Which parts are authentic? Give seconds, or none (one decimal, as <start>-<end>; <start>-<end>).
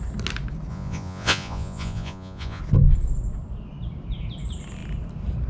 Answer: 0.0-0.7; 2.6-5.5